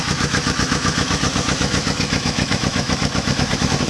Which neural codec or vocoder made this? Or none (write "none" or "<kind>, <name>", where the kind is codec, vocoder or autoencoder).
autoencoder, DAC-VAE